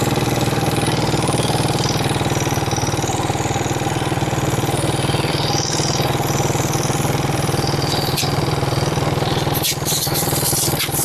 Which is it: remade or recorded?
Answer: remade